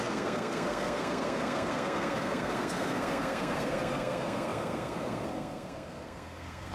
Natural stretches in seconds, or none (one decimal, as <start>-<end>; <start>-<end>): none